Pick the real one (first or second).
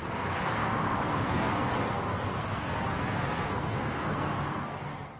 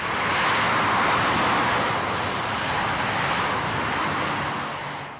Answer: second